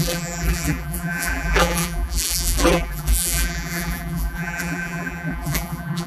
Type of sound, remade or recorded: remade